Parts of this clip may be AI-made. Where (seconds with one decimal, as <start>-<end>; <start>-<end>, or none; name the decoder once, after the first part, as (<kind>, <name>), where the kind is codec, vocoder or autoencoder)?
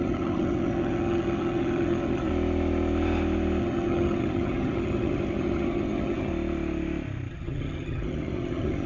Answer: 0.0-2.3 (vocoder, HiFi-GAN); 3.6-6.3; 7.3-8.9